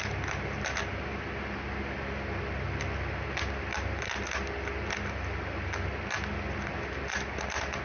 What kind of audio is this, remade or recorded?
recorded